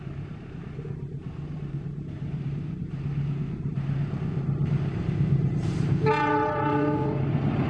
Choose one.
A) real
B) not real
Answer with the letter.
B